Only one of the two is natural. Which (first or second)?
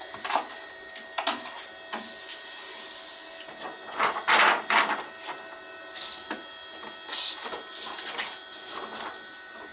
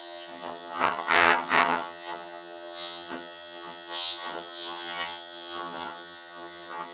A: first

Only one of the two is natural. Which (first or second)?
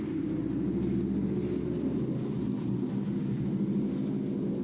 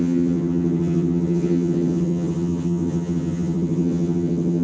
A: first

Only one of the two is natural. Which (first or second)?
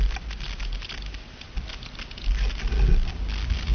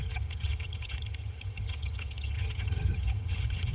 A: first